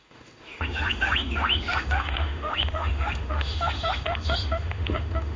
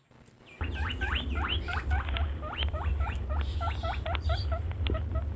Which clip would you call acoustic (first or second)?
second